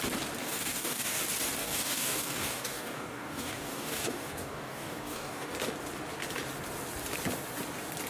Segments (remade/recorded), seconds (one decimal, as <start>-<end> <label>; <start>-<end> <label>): 0.0-0.4 recorded; 0.4-1.2 remade; 1.2-1.6 recorded; 1.6-5.5 remade; 5.5-8.1 recorded